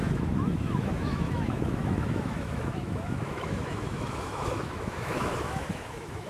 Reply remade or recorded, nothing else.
remade